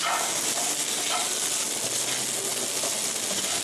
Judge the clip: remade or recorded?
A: recorded